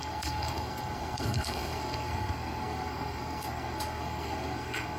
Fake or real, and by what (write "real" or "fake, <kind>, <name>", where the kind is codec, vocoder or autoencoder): fake, codec, SNAC